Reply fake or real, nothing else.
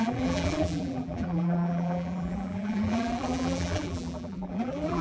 fake